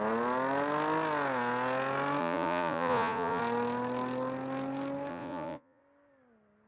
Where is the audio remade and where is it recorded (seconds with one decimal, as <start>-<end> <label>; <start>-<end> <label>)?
0.0-2.2 recorded; 2.2-3.4 remade; 3.4-5.1 recorded; 5.1-5.8 remade; 5.8-6.7 recorded